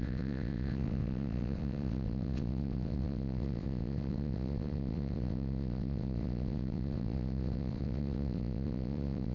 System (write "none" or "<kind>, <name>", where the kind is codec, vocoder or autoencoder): vocoder, WaveNeXt